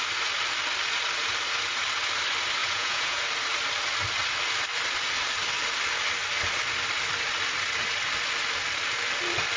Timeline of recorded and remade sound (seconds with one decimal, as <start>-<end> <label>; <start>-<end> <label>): 0.0-2.6 recorded; 2.6-3.2 remade; 3.2-9.6 recorded